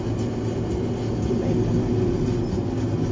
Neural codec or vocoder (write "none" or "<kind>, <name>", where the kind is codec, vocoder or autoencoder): none